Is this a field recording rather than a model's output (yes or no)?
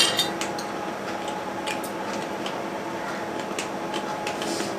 yes